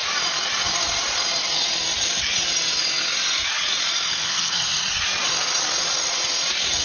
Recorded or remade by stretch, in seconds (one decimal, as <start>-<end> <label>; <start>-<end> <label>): 0.0-4.1 recorded; 4.1-4.7 remade; 4.7-6.8 recorded